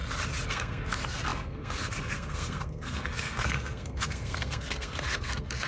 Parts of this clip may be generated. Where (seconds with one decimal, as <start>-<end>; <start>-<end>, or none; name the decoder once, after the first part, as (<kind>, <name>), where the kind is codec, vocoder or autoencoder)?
0.5-5.7 (codec, SNAC)